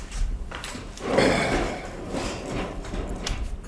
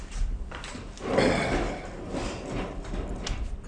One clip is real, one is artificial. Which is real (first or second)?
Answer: second